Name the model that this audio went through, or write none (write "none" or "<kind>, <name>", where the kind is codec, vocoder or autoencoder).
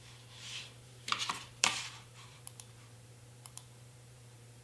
vocoder, BigVGAN v2